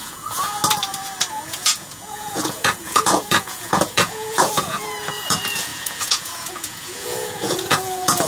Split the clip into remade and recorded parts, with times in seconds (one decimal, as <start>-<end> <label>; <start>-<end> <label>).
0.0-0.6 remade; 0.6-1.3 recorded; 1.3-8.3 remade